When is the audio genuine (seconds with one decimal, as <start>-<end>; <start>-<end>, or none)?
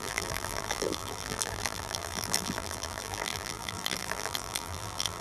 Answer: none